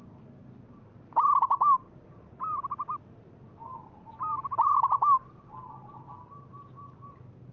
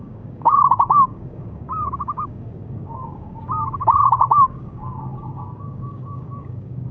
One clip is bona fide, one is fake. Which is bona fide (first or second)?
first